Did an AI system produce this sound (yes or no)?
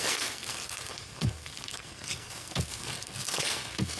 yes